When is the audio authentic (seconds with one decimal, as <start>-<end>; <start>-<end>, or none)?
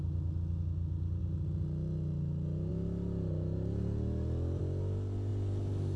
0.0-6.0